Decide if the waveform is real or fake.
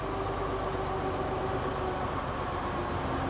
real